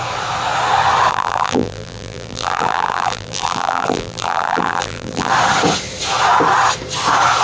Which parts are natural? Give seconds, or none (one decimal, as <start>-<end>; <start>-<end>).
0.0-1.1; 5.3-7.4